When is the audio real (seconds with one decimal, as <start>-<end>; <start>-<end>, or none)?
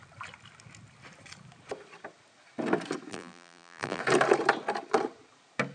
0.0-3.1; 4.0-5.7